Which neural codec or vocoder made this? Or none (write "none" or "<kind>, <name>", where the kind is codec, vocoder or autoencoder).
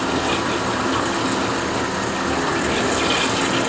none